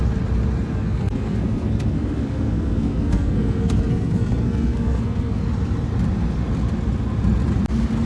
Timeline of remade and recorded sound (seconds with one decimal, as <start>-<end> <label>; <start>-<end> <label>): 0.0-0.7 recorded; 0.7-5.4 remade; 5.4-8.1 recorded